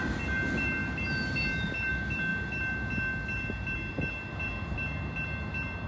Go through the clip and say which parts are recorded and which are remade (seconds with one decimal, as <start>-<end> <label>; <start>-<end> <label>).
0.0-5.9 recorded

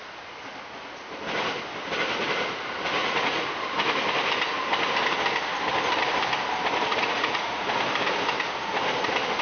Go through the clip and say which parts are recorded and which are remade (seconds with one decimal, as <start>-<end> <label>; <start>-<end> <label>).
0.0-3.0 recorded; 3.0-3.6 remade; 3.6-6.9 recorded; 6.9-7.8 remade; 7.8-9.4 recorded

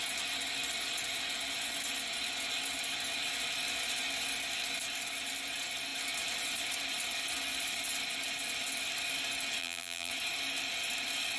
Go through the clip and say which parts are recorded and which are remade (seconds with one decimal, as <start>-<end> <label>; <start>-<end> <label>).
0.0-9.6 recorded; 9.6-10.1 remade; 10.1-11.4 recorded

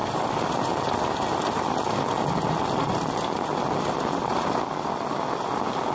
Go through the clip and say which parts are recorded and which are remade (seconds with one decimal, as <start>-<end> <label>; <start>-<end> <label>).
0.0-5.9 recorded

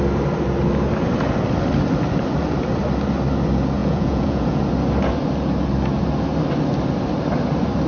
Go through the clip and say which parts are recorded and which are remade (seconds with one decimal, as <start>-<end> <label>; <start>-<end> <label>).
0.0-3.8 recorded; 3.8-4.6 remade; 4.6-7.9 recorded

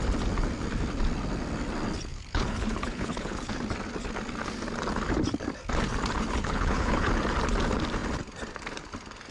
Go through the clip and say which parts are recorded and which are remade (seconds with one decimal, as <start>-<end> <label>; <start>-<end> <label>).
0.0-2.1 recorded; 2.1-3.5 remade; 3.5-6.4 recorded; 6.4-7.1 remade; 7.1-9.3 recorded

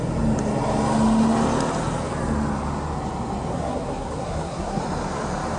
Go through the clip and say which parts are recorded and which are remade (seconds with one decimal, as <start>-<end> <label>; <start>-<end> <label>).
0.0-3.5 recorded; 3.5-4.8 remade; 4.8-5.6 recorded